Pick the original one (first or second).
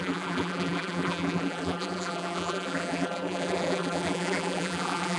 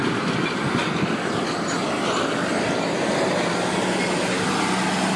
second